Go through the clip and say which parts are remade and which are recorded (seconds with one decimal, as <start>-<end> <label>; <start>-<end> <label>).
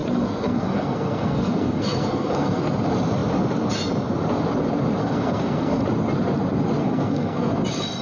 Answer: 0.0-2.6 remade; 2.6-5.0 recorded; 5.0-5.8 remade; 5.8-6.8 recorded; 6.8-7.5 remade; 7.5-8.0 recorded